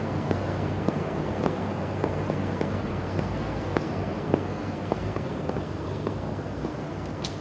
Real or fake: fake